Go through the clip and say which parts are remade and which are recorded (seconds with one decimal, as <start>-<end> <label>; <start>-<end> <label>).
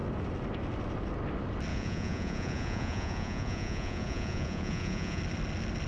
0.0-1.7 recorded; 1.7-5.2 remade; 5.2-5.9 recorded